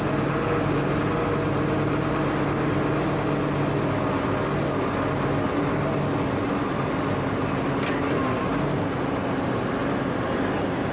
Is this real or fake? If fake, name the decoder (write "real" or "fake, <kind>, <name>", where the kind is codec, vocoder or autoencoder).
real